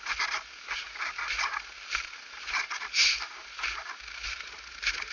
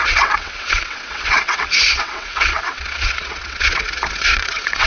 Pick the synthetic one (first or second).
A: second